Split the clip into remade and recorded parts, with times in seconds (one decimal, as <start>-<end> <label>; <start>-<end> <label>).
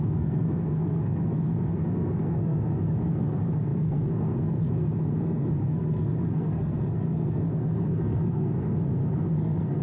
0.0-9.8 remade